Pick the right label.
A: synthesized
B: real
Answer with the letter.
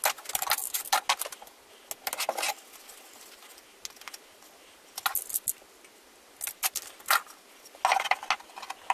B